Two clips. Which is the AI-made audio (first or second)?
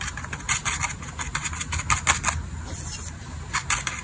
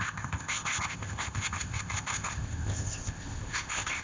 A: second